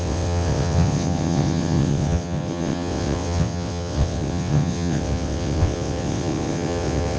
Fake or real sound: fake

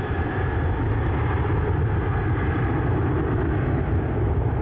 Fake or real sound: real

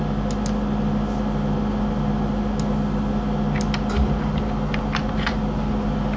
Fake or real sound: real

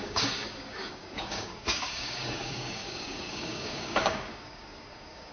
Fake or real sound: fake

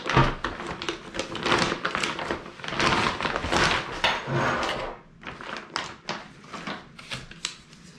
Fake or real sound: real